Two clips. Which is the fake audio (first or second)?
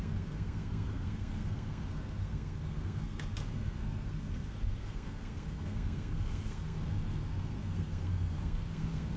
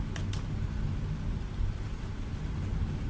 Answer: first